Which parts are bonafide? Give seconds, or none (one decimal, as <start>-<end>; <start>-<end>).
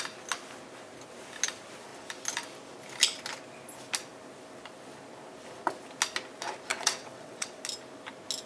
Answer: 0.0-6.7; 7.6-8.5